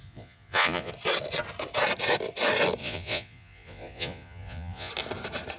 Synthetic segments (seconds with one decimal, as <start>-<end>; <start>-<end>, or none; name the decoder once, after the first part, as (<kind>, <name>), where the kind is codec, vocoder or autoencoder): 0.0-0.9 (vocoder, Vocos); 2.8-4.9

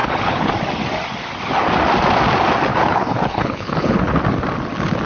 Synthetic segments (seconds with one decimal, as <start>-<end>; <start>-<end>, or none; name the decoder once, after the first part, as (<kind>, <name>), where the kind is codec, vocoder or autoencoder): 0.0-0.5 (codec, HILCodec); 2.7-4.1

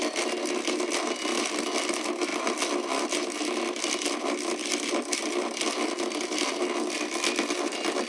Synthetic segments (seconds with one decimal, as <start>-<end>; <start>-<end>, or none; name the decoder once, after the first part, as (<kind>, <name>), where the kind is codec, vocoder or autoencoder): none